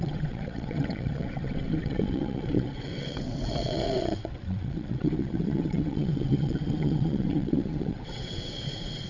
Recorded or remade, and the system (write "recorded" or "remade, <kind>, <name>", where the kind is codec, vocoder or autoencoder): remade, vocoder, WaveNeXt